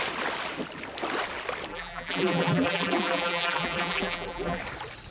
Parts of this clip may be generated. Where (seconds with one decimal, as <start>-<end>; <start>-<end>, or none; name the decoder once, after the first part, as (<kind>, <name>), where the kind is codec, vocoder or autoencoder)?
1.7-4.6 (vocoder, BigVGAN v2)

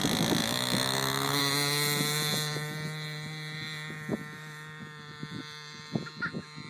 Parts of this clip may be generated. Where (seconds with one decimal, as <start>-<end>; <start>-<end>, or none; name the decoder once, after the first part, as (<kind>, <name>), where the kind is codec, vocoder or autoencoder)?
0.4-1.4 (autoencoder, DAC-VAE)

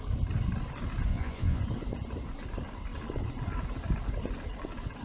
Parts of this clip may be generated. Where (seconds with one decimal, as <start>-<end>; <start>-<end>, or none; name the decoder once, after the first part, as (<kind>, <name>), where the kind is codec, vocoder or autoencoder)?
1.1-1.6 (vocoder, Vocos)